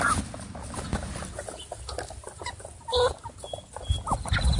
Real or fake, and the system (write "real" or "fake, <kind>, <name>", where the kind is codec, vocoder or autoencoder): real